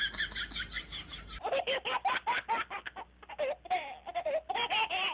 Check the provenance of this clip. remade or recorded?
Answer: recorded